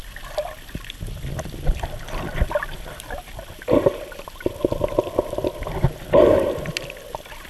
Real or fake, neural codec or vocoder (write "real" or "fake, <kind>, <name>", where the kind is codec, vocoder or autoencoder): real